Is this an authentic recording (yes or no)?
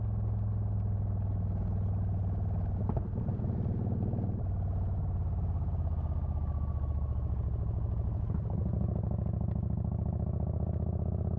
yes